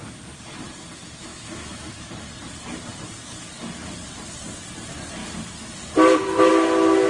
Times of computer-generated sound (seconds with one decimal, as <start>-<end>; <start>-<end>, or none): 1.3-2.1